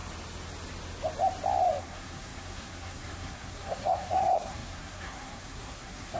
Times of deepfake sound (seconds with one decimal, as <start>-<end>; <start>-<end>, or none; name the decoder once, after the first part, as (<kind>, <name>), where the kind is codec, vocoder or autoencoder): 1.8-6.2 (codec, SNAC)